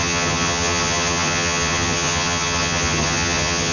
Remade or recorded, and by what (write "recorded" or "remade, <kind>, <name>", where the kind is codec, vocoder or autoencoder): remade, vocoder, HiFi-GAN